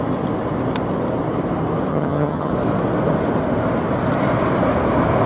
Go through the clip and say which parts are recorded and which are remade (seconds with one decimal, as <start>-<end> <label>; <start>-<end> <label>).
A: 0.0-1.9 recorded; 1.9-2.5 remade; 2.5-5.3 recorded